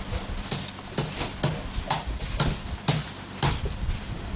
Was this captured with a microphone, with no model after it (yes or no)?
yes